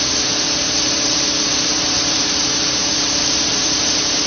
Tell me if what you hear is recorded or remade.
remade